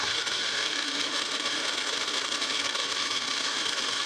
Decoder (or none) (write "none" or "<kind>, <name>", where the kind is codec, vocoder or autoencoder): autoencoder, DAC-VAE